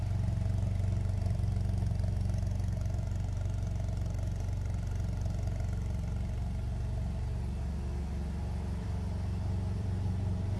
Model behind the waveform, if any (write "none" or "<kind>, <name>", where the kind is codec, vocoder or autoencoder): vocoder, BigVGAN v2